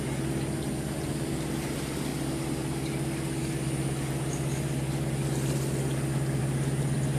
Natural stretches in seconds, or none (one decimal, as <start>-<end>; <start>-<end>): 0.0-7.2